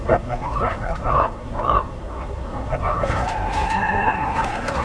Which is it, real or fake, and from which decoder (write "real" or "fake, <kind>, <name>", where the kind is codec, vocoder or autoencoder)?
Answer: fake, codec, SNAC